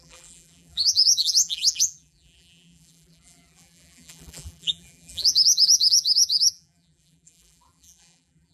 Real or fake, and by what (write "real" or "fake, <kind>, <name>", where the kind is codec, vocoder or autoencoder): fake, vocoder, BigVGAN v2